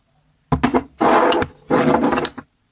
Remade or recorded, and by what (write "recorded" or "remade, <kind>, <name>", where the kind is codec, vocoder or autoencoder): recorded